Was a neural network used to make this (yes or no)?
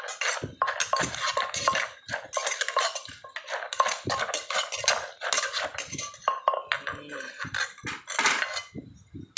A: no